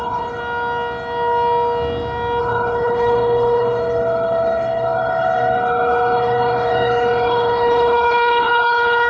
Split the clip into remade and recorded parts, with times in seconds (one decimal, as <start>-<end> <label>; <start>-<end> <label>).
0.0-0.4 remade; 0.4-2.4 recorded; 2.4-9.1 remade